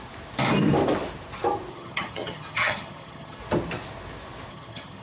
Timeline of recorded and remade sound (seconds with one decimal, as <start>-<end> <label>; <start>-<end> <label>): 0.0-1.7 recorded; 1.7-3.4 remade; 3.4-4.5 recorded; 4.5-5.0 remade